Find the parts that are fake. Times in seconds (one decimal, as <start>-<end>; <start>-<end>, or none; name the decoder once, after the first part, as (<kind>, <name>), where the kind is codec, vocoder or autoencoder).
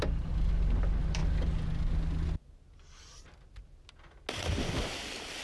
none